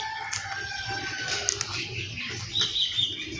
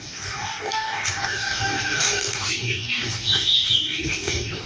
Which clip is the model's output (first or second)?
second